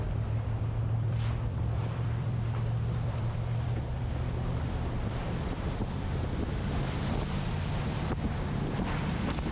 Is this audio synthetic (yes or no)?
yes